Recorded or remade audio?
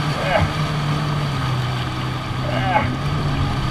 recorded